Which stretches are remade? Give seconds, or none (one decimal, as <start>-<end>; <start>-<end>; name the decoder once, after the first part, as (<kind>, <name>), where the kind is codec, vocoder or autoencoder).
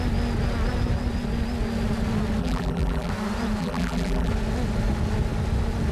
2.4-3.1 (vocoder, BigVGAN v2); 3.6-4.3